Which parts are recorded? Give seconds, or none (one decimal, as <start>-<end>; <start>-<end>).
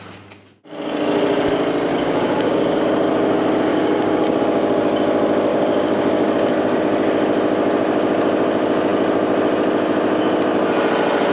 0.0-1.9; 2.8-3.7; 4.4-5.5; 6.8-11.3